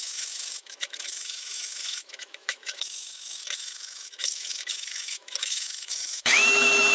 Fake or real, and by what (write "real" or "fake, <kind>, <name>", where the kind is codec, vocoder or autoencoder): fake, autoencoder, DAC-VAE